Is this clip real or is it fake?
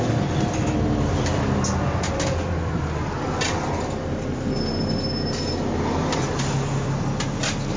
real